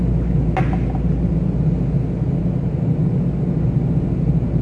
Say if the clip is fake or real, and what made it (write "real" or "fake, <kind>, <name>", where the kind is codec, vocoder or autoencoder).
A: real